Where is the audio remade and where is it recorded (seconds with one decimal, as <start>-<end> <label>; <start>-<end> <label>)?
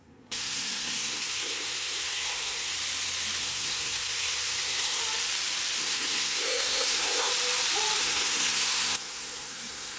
0.0-2.7 remade; 2.7-3.4 recorded; 3.4-5.0 remade; 5.0-5.8 recorded; 5.8-7.3 remade; 7.3-8.0 recorded; 8.0-10.0 remade